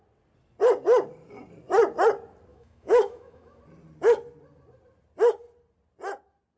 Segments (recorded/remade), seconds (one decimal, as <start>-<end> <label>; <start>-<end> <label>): 0.0-2.5 recorded; 2.5-3.6 remade; 3.6-6.6 recorded